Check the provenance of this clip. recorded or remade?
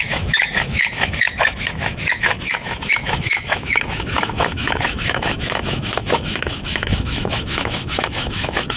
remade